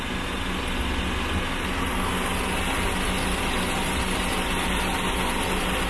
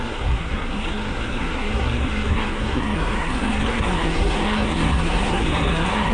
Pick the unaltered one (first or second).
first